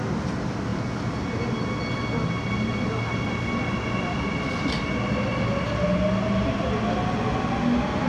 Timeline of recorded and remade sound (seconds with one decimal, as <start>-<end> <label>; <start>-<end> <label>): 0.0-8.1 recorded